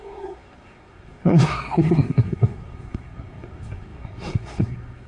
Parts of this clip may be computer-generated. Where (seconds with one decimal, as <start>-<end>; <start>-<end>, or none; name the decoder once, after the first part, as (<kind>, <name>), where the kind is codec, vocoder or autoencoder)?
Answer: 0.0-5.1 (codec, SNAC)